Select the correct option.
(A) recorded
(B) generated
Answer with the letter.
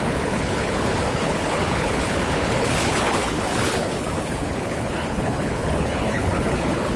B